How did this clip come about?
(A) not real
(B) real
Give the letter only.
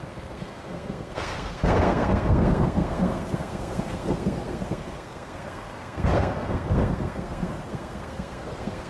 A